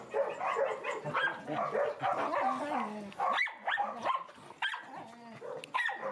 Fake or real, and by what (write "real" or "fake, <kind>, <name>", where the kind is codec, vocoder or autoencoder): real